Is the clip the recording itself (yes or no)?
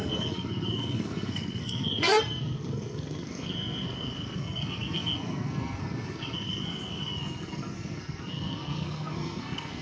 no